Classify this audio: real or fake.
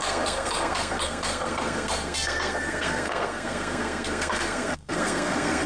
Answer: fake